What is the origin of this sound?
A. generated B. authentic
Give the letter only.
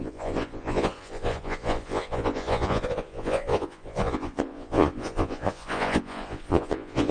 A